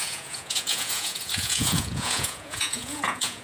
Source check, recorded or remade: remade